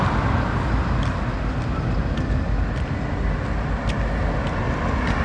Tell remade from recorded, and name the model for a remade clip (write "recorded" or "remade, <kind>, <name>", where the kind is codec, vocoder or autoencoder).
recorded